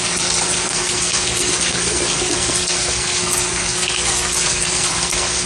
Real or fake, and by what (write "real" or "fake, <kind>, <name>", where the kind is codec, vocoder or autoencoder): fake, codec, SNAC